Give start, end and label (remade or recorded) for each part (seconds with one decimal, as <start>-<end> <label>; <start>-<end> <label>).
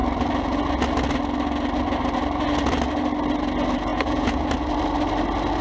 0.0-3.9 recorded; 3.9-4.5 remade; 4.5-5.6 recorded